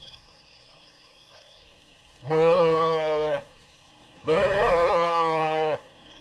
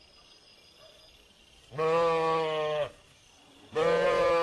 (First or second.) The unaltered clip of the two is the second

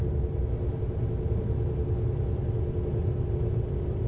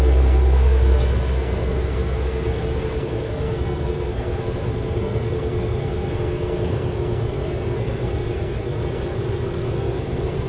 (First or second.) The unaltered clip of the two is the first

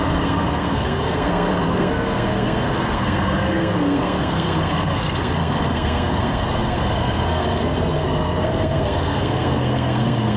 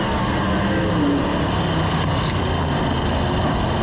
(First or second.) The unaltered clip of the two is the second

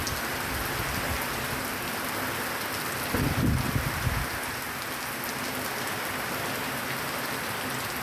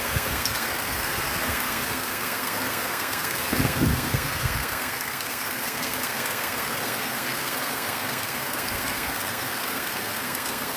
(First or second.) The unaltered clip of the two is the first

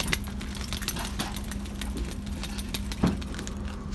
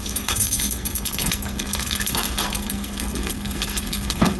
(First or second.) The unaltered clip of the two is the first